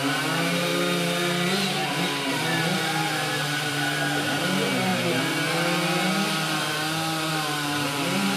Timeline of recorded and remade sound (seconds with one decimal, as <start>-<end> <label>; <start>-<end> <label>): 0.0-0.7 remade; 0.7-3.4 recorded; 3.4-4.9 remade; 4.9-7.3 recorded; 7.3-8.4 remade